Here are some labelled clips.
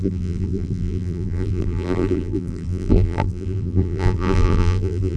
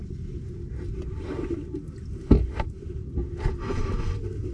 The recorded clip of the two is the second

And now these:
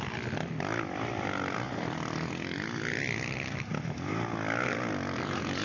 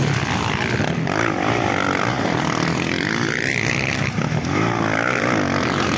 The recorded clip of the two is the first